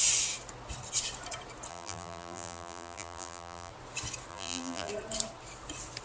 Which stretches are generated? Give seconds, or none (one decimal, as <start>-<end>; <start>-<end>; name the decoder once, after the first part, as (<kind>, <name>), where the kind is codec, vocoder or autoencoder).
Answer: 1.7-3.7 (vocoder, BigVGAN v2); 4.3-4.9